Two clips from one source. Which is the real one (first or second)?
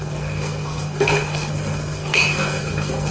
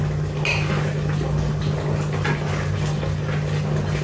second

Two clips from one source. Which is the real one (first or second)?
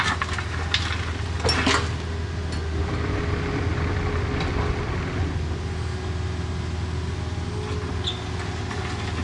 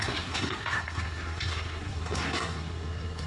first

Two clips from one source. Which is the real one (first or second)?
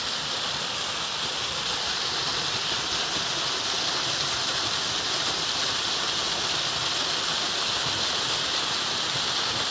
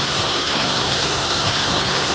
first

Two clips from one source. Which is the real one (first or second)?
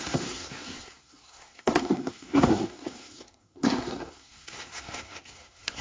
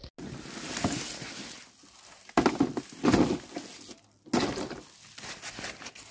second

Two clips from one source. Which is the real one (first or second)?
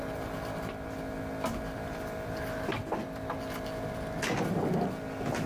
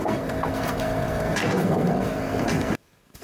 first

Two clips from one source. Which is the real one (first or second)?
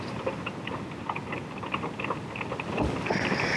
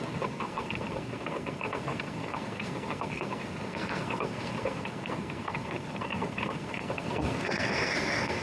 first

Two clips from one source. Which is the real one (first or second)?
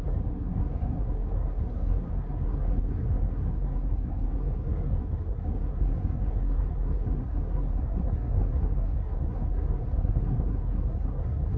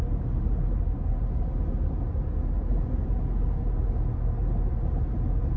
second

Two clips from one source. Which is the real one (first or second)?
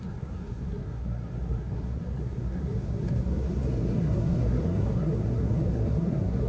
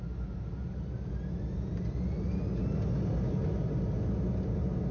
second